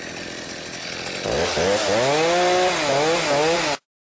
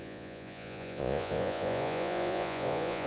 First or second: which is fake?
second